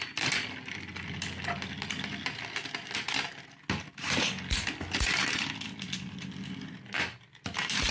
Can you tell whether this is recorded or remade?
recorded